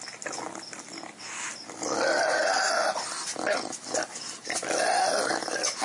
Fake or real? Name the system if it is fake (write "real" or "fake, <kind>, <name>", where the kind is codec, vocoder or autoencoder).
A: real